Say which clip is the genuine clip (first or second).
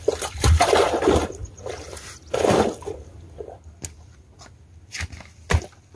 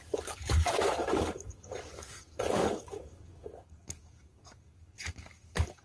first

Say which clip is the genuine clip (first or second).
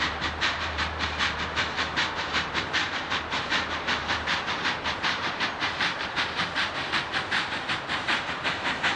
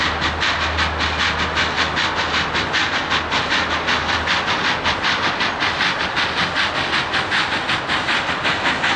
second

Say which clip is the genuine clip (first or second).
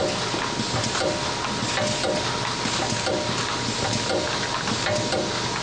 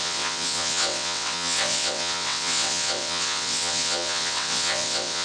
first